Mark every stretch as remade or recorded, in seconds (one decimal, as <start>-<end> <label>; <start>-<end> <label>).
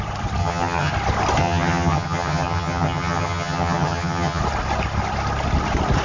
0.0-0.4 recorded; 0.4-0.9 remade; 0.9-1.4 recorded; 1.4-4.4 remade; 4.4-6.0 recorded